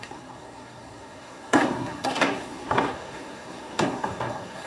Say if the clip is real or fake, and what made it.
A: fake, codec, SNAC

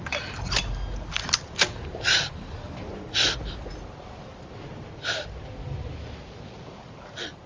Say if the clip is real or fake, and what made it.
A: real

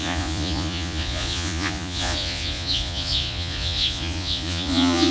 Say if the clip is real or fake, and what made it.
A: fake, vocoder, Vocos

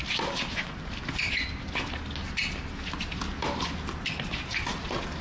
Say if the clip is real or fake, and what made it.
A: real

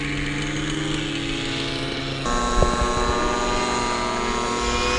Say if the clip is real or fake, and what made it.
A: real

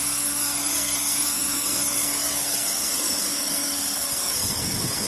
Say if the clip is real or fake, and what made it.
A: fake, codec, SNAC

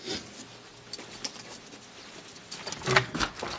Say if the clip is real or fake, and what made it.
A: real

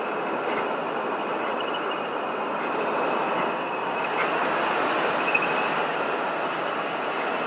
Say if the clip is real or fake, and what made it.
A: real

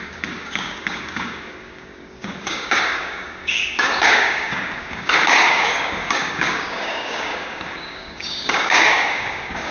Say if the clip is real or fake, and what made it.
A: fake, codec, DAC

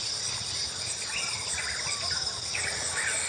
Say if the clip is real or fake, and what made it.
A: real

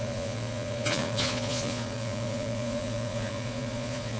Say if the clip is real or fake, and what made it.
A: fake, vocoder, Vocos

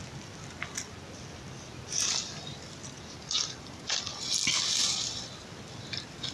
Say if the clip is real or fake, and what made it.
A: real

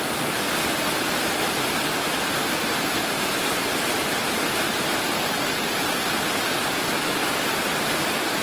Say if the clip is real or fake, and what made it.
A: real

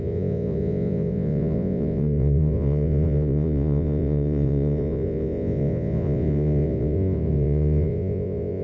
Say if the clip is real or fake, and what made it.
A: fake, vocoder, Vocos